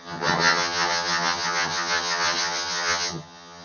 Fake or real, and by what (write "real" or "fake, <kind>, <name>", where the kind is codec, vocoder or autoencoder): fake, vocoder, HiFi-GAN